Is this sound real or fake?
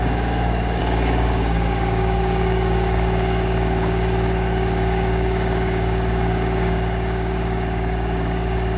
fake